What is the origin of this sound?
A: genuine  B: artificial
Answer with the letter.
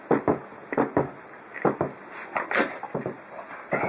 A